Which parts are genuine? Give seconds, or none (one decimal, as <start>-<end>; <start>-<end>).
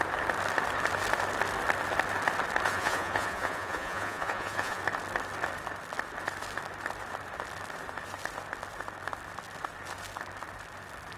0.0-2.7; 4.8-11.2